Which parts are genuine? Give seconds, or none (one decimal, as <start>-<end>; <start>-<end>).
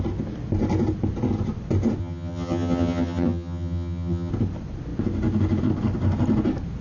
0.0-2.0; 4.3-6.8